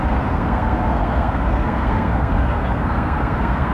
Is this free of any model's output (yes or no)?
no